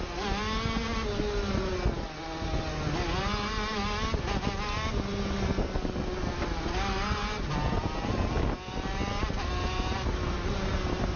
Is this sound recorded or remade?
recorded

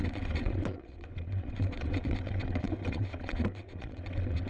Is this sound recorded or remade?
remade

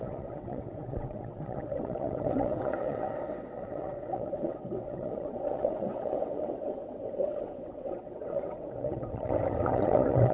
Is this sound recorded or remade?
remade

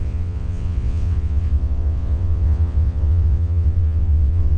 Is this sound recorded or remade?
remade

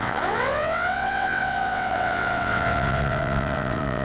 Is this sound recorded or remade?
remade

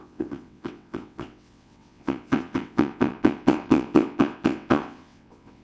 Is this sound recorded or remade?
remade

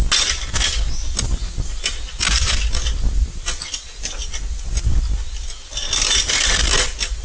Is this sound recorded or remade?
recorded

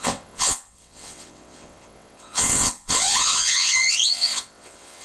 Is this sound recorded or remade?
remade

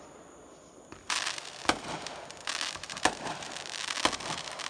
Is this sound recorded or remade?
recorded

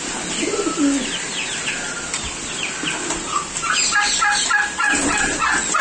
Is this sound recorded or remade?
recorded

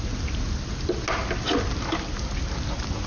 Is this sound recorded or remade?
recorded